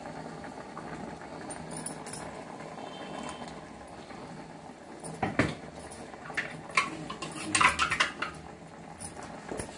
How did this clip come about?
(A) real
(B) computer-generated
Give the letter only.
A